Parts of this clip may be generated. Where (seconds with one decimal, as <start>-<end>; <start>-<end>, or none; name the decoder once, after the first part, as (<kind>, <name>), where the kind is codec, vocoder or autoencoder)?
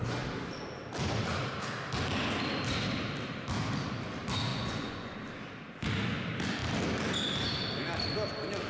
4.5-5.1 (vocoder, Vocos)